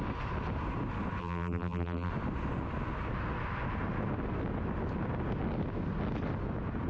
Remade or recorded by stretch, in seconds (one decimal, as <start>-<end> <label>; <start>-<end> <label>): 0.0-1.2 recorded; 1.2-2.1 remade; 2.1-6.9 recorded